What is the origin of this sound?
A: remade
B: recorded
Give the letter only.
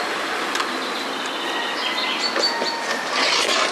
B